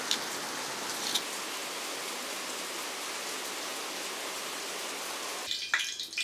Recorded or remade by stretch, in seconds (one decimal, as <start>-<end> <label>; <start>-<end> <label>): 0.0-6.2 recorded